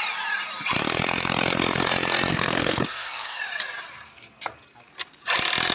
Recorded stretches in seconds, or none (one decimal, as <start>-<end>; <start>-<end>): 0.0-2.3; 3.4-5.7